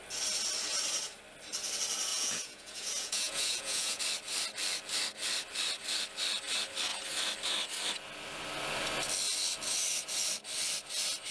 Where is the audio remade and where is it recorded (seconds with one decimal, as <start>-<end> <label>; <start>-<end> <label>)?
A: 0.0-2.1 recorded; 2.1-4.0 remade; 4.0-11.3 recorded

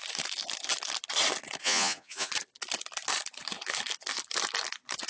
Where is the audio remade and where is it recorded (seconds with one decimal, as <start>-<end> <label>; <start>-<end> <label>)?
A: 0.0-1.6 recorded; 1.6-2.3 remade; 2.3-5.1 recorded

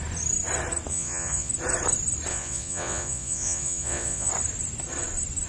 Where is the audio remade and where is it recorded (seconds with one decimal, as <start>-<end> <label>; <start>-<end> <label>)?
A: 0.0-0.9 recorded; 0.9-1.5 remade; 1.5-2.3 recorded; 2.3-4.3 remade; 4.3-5.5 recorded